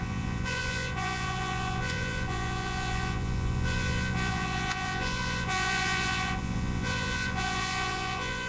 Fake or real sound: fake